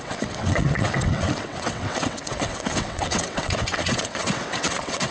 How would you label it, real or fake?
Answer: fake